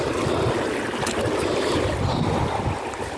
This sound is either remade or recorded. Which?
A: recorded